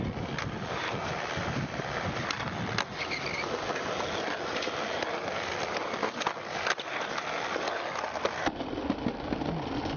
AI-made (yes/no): no